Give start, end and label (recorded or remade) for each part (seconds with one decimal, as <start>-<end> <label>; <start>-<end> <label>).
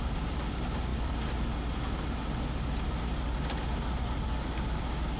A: 0.0-5.2 recorded